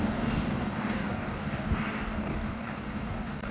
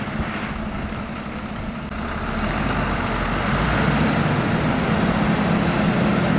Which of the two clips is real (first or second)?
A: second